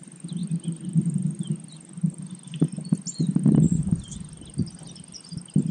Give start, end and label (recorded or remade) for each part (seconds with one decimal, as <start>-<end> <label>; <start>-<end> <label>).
0.0-5.7 recorded